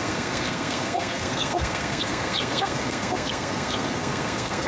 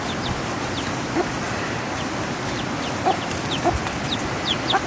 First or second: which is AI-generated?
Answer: first